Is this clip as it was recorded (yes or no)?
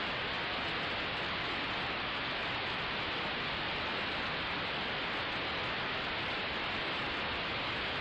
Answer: yes